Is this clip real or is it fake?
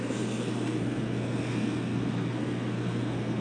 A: fake